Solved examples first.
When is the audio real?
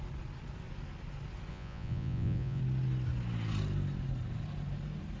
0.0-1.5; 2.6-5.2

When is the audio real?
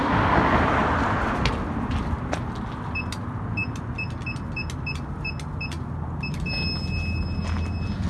0.0-8.1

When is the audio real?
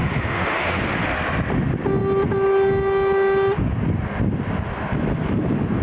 0.8-5.8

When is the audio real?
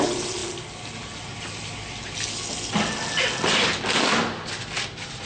0.0-5.3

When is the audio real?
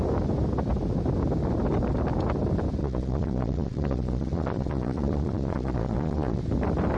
0.0-2.8; 6.4-7.0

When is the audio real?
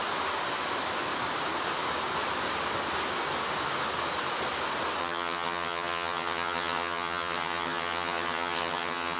0.0-5.0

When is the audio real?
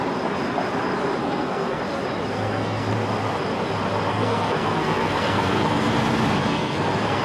0.0-1.2; 1.8-2.3; 2.9-4.1; 5.9-6.4